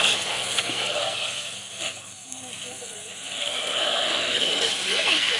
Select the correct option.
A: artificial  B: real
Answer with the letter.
A